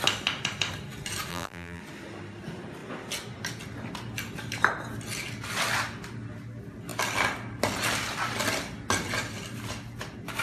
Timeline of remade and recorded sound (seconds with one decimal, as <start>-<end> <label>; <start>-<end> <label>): 0.0-1.3 recorded; 1.3-1.8 remade; 1.8-10.4 recorded